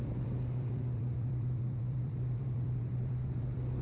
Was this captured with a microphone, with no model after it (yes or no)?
no